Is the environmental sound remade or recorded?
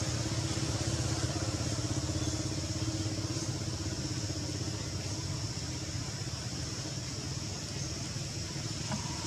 recorded